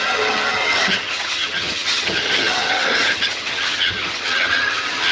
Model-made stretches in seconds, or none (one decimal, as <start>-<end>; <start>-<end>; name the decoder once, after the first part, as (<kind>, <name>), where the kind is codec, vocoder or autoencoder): 0.0-5.1 (vocoder, HiFi-GAN)